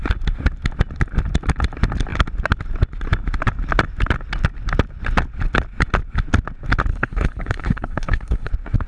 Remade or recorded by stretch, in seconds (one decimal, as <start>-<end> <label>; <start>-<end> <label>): 0.0-6.9 recorded; 6.9-8.5 remade; 8.5-8.9 recorded